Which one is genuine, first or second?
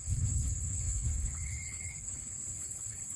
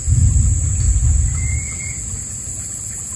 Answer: second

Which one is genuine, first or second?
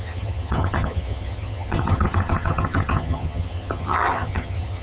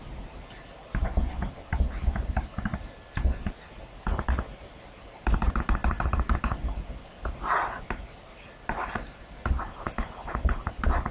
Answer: second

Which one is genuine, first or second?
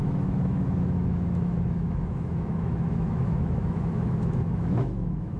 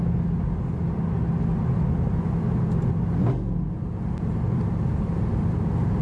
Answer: second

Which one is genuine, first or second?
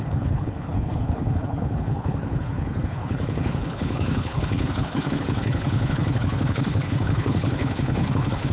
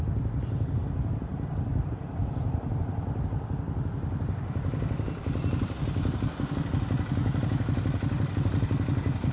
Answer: second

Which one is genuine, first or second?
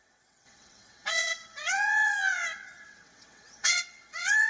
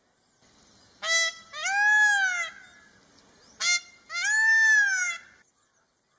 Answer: second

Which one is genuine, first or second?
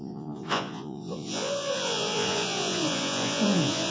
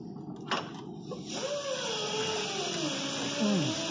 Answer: second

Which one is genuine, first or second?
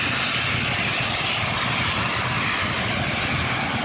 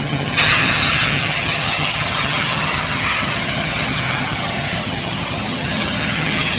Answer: first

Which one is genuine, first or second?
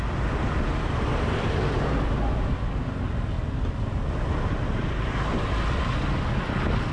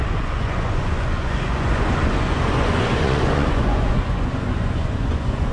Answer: first